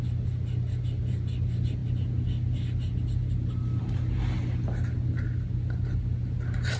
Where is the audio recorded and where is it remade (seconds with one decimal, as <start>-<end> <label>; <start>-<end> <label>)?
0.0-6.8 recorded